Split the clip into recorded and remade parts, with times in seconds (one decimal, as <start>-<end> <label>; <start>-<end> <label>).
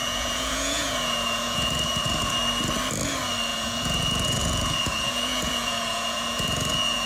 0.0-2.3 remade; 2.3-3.5 recorded; 3.5-7.1 remade